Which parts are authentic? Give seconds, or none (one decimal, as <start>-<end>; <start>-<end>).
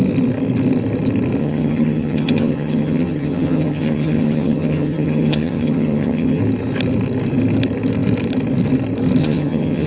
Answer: 0.0-1.4; 6.4-9.2